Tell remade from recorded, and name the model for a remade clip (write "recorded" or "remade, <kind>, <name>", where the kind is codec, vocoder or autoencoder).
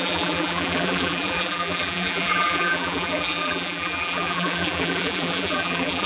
remade, vocoder, BigVGAN v2